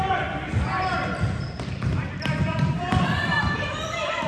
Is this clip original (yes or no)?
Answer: no